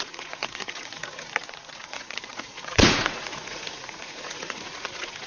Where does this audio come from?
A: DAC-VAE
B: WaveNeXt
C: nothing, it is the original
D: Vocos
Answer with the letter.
D